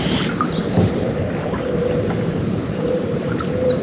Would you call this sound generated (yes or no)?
yes